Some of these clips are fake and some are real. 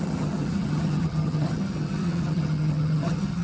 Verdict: fake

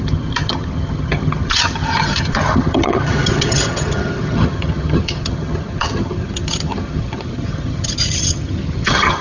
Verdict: fake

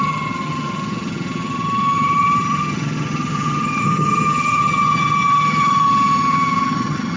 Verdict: fake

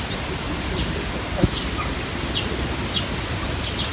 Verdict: real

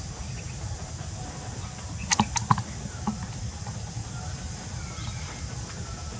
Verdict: real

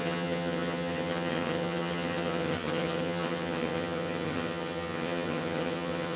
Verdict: fake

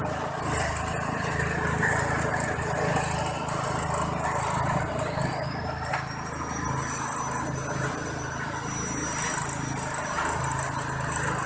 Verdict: real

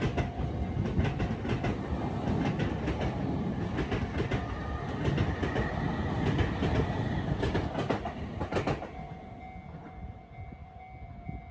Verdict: real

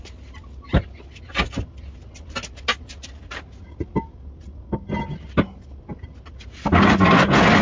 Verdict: real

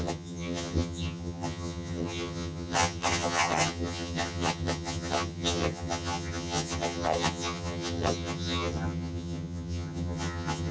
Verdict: fake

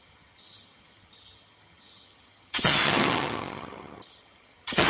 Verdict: fake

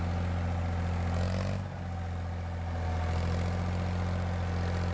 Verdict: real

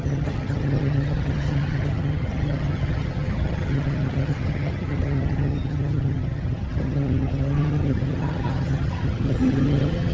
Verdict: fake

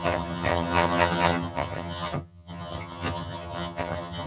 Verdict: fake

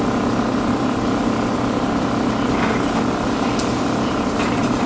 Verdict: real